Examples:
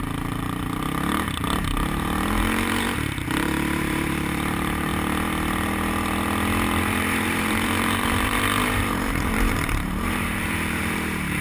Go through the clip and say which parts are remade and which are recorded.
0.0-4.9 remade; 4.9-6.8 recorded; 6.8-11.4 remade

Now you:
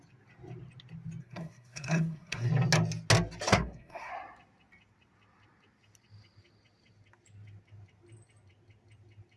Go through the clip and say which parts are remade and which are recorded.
0.0-1.2 recorded; 1.2-2.5 remade; 2.5-3.5 recorded; 3.5-4.1 remade; 4.1-9.4 recorded

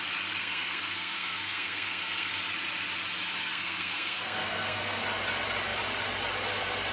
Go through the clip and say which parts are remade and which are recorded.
0.0-0.4 recorded; 0.4-2.3 remade; 2.3-3.4 recorded; 3.4-5.0 remade; 5.0-6.9 recorded

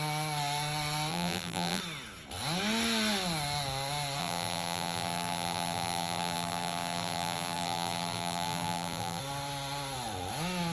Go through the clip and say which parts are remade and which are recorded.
0.0-1.1 recorded; 1.1-1.8 remade; 1.8-4.2 recorded; 4.2-9.2 remade; 9.2-10.7 recorded

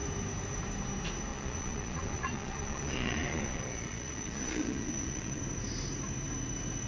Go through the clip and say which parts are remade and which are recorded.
0.0-1.3 recorded; 1.3-5.4 remade; 5.4-6.9 recorded

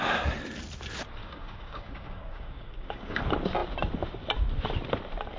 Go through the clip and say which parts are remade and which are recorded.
0.0-1.2 recorded; 1.2-3.2 remade; 3.2-5.4 recorded